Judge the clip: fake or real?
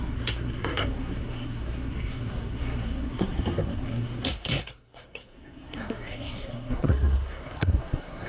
fake